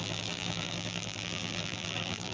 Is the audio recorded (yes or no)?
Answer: no